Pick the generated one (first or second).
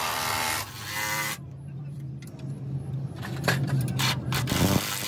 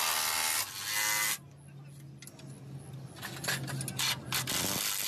first